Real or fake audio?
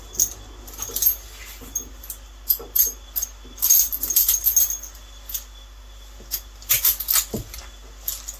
real